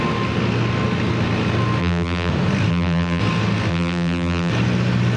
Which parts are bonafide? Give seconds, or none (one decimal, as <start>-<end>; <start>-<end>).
0.0-1.8; 2.3-2.7; 3.2-3.7; 4.5-5.2